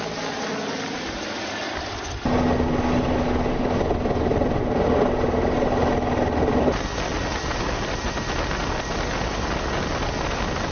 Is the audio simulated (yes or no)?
no